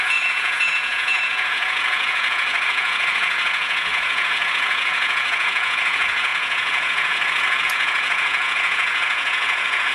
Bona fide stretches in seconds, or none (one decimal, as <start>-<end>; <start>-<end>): none